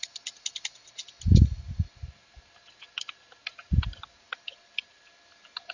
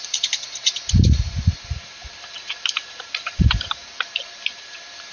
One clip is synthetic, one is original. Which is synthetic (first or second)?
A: second